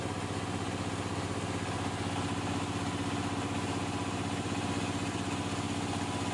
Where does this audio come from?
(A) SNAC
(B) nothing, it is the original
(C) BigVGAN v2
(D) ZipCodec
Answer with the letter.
B